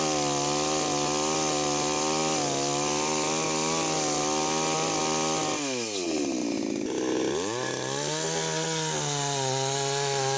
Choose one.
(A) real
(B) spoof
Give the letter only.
A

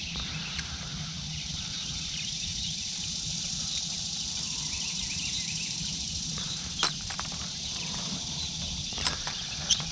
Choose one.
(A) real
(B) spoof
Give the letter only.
B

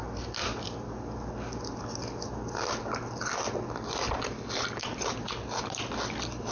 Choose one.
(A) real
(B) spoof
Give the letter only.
A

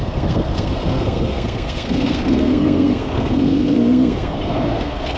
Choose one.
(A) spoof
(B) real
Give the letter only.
A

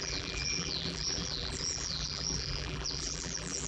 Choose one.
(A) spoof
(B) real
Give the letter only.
A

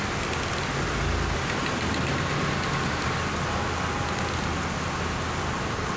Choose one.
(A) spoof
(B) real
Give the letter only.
B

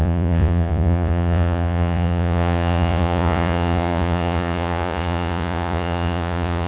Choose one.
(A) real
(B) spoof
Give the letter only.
B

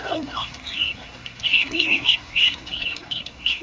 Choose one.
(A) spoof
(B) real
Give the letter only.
A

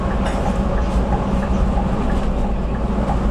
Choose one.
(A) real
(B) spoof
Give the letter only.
A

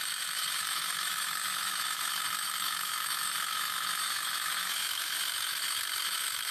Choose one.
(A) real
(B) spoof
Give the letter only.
B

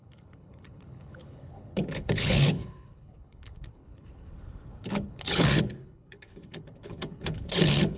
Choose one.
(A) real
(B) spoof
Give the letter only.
B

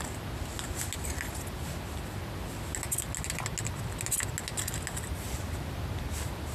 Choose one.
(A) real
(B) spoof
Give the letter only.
A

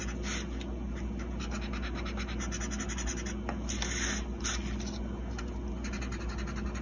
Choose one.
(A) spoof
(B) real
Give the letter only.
B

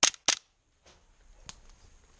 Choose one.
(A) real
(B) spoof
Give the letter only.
A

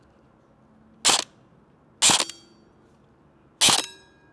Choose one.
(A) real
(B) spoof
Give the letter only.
A